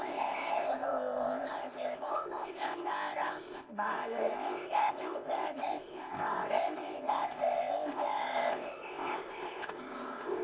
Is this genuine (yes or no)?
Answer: no